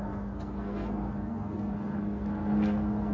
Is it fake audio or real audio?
fake